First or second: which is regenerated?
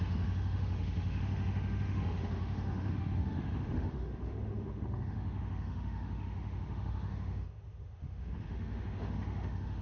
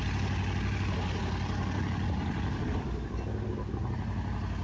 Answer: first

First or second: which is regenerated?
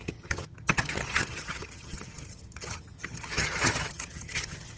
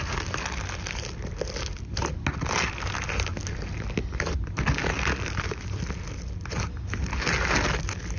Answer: first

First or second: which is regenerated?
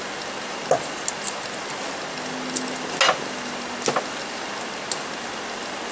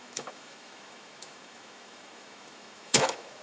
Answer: second